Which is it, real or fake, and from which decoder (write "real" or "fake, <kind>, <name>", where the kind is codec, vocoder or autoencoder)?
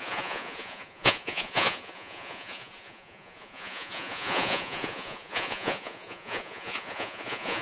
fake, vocoder, Vocos